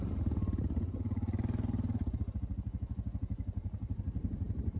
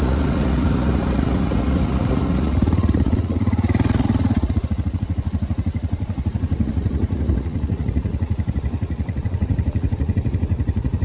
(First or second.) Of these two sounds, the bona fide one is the first